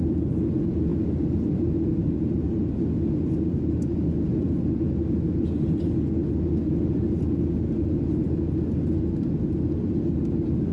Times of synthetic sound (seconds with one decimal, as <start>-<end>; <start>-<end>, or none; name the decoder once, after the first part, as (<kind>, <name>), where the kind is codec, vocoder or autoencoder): none